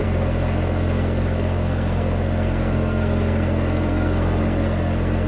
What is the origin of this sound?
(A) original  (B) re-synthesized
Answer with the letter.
B